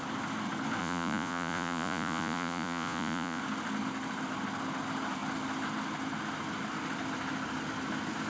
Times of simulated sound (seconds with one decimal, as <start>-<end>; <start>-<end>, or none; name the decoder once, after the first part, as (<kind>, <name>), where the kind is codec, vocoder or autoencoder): 0.8-3.4 (vocoder, Vocos)